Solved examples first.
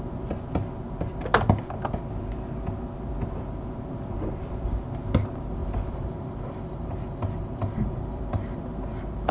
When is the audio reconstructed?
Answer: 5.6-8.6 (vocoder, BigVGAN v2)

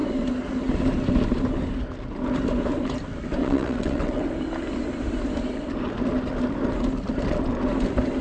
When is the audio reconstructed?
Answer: 3.4-4.3 (vocoder, WaveNeXt)

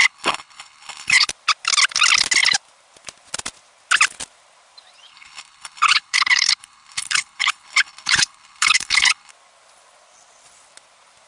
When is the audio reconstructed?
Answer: 0.0-1.3 (codec, HILCodec); 5.1-9.3

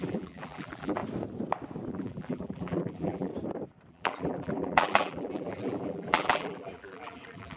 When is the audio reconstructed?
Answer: 0.0-1.0 (vocoder, BigVGAN v2); 1.9-3.3; 3.9-7.6

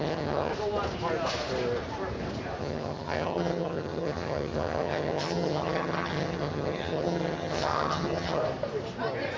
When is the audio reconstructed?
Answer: 0.0-0.5 (vocoder, HiFi-GAN); 2.6-8.4

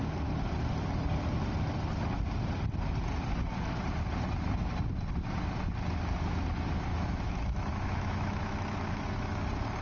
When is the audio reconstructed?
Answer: 6.9-9.4 (autoencoder, DAC-VAE)